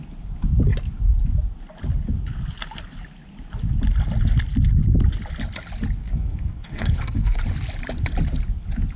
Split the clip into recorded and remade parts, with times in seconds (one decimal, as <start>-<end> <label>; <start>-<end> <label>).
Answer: 0.0-6.0 recorded; 6.0-7.4 remade; 7.4-9.0 recorded